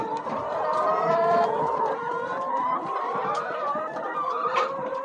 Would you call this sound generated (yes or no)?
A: yes